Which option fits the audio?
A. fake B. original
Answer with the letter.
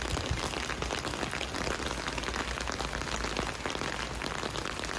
B